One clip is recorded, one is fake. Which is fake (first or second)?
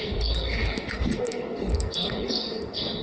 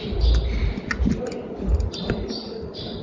first